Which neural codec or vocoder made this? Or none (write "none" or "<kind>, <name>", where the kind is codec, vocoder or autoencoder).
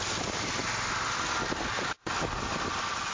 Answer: vocoder, BigVGAN v2